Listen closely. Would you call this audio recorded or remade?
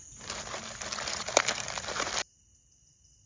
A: recorded